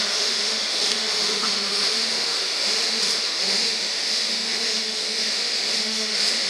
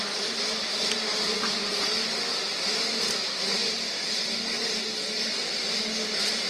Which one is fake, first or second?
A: first